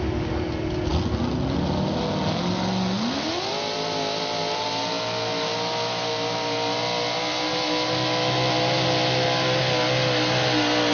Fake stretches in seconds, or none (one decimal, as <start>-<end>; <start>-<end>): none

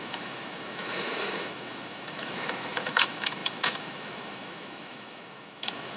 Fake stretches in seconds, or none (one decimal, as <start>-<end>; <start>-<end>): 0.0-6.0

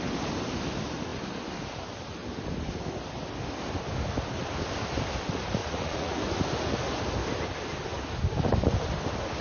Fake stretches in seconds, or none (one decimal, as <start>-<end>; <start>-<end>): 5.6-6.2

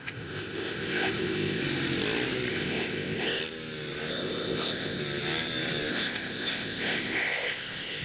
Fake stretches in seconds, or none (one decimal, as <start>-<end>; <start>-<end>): 0.0-1.6; 2.5-3.4; 4.1-5.0; 5.9-8.0